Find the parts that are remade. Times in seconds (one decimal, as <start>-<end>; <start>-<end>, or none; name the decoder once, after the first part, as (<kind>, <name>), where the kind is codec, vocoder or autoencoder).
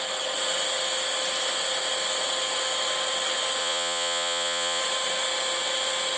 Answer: 3.6-4.8 (vocoder, Vocos)